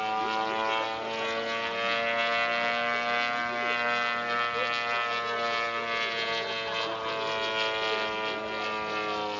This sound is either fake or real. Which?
real